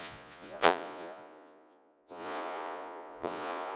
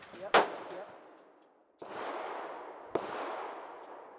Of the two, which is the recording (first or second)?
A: second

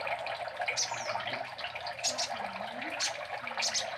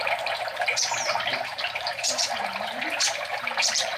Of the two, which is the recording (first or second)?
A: first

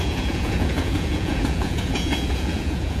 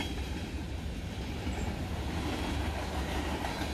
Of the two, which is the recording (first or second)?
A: second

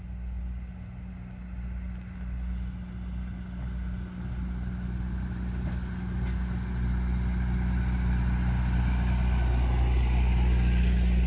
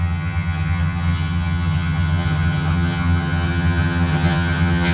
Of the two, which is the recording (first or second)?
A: first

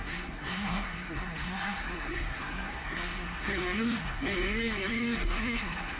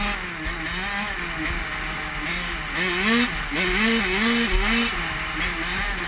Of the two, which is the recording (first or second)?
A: second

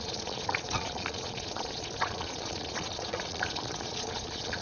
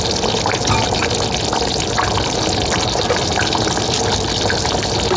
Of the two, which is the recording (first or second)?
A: second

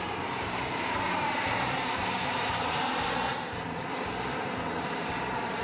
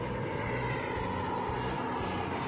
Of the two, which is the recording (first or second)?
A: second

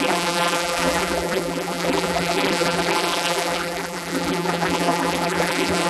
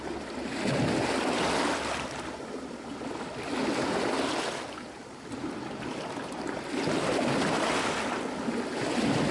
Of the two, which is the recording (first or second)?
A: second